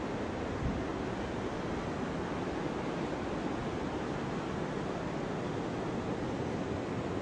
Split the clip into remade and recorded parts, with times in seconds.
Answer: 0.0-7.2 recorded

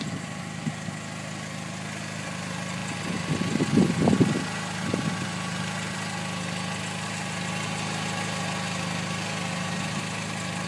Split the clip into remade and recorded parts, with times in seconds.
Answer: 0.0-10.7 recorded

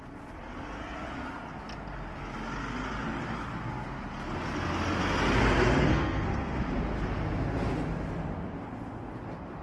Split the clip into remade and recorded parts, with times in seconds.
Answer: 0.0-5.8 recorded; 5.8-6.6 remade; 6.6-9.6 recorded

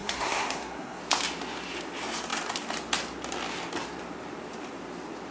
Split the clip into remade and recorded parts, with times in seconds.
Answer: 0.0-1.0 remade; 1.0-5.3 recorded

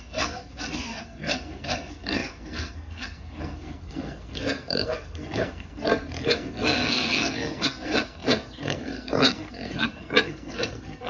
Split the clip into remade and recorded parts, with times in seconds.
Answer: 0.0-11.1 remade

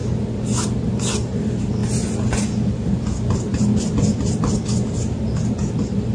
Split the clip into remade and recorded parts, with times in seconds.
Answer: 0.0-6.1 recorded